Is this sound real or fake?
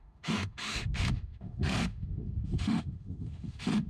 fake